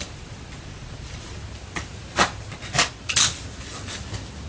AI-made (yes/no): no